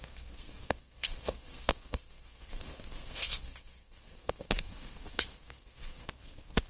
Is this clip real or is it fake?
fake